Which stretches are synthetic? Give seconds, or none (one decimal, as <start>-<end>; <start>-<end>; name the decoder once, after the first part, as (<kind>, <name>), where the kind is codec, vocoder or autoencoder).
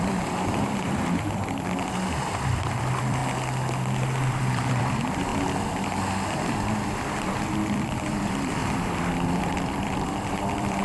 0.0-3.2 (vocoder, BigVGAN v2); 4.3-5.3; 7.7-8.6; 9.4-10.8